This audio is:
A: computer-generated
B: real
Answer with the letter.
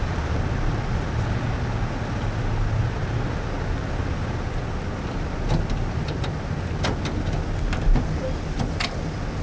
B